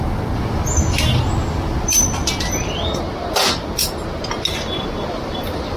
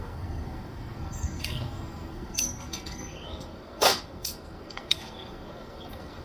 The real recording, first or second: first